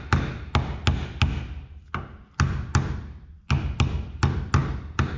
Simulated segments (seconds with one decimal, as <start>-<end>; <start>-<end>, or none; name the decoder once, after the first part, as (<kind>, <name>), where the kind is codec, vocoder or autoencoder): 4.6-5.2 (vocoder, BigVGAN v2)